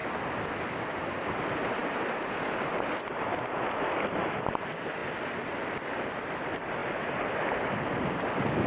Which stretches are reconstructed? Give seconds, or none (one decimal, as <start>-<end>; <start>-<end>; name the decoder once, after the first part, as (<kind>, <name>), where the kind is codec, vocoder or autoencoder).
none